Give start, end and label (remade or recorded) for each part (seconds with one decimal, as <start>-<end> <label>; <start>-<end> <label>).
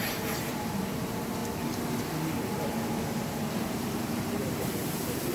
0.0-1.4 remade; 1.4-3.5 recorded; 3.5-5.3 remade